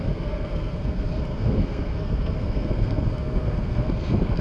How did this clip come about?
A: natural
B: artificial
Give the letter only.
B